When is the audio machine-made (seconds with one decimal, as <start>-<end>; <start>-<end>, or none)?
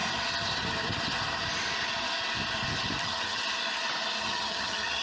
3.0-3.4; 4.2-5.0